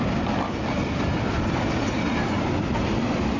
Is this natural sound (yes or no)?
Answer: yes